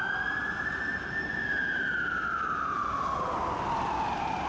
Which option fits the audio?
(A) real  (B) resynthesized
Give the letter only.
A